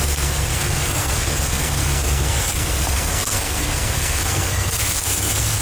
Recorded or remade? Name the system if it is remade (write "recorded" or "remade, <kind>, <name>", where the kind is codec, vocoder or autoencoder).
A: remade, codec, SNAC